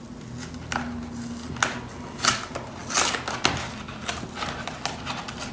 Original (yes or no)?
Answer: yes